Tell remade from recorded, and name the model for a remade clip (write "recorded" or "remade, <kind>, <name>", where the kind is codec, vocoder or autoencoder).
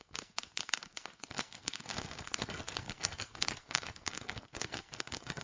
remade, codec, SNAC